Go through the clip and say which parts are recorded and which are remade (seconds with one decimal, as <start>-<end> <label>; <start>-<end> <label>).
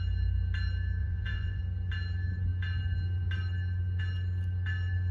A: 0.0-1.0 recorded; 1.0-1.6 remade; 1.6-5.1 recorded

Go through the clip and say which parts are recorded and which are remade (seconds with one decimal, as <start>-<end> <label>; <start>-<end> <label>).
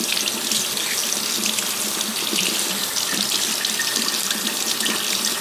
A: 0.0-5.4 recorded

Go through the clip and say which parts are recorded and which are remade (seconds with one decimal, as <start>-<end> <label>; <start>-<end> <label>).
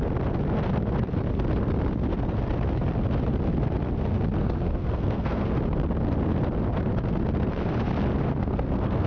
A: 0.0-4.4 recorded; 4.4-5.4 remade; 5.4-8.4 recorded; 8.4-9.1 remade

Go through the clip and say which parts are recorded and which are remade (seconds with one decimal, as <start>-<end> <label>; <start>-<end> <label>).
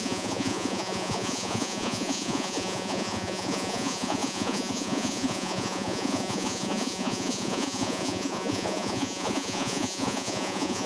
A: 0.0-10.9 remade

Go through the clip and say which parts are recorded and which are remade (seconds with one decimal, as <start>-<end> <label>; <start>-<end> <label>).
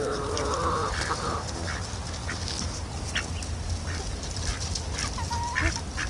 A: 0.0-6.1 recorded